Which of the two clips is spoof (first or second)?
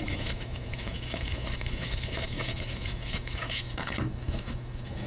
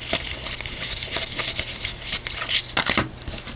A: first